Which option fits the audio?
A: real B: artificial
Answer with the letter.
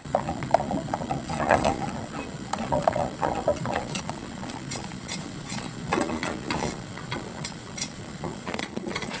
B